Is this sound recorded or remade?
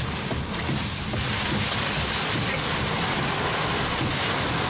recorded